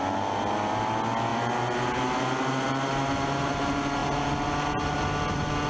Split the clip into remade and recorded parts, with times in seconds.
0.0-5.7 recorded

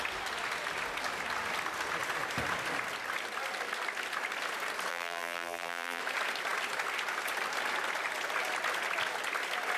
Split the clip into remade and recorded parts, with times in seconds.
0.0-4.9 recorded; 4.9-6.0 remade; 6.0-9.8 recorded